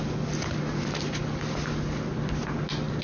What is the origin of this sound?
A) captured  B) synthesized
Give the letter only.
A